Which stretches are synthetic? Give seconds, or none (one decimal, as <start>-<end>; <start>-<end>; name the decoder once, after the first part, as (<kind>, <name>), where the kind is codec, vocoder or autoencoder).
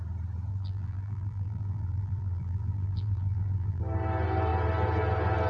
0.5-3.8 (vocoder, BigVGAN v2)